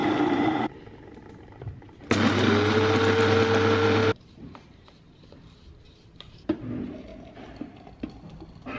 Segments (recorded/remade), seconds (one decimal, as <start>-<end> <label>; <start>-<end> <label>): 0.0-1.8 remade; 1.8-4.0 recorded; 4.0-6.6 remade; 6.6-7.1 recorded; 7.1-8.1 remade; 8.1-8.8 recorded